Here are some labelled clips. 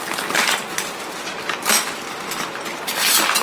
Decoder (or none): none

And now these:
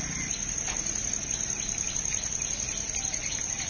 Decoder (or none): none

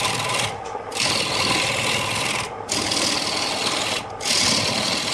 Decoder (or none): none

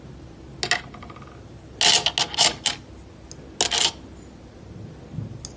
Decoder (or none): none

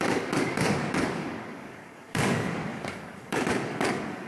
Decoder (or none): codec, DAC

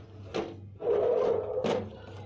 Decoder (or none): none